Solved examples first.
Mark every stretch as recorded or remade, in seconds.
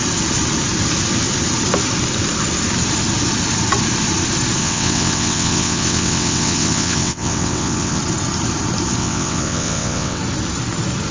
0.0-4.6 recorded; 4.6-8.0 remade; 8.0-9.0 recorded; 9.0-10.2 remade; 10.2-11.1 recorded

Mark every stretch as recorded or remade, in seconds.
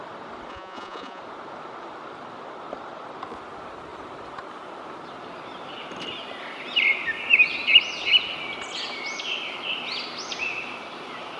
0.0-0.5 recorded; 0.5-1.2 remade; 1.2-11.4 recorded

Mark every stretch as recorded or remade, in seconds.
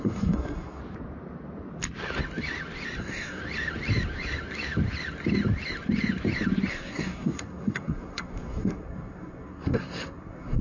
0.0-0.8 remade; 0.8-3.0 recorded; 3.0-3.4 remade; 3.4-6.7 recorded; 6.7-10.6 remade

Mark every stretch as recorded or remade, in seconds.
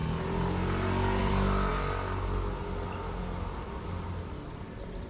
0.0-1.2 recorded; 1.2-1.7 remade; 1.7-5.1 recorded